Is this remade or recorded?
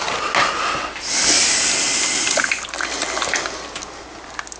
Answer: recorded